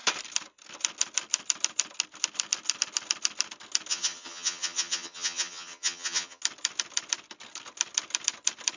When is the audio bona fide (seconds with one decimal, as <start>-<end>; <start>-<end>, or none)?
0.0-3.9; 6.4-8.8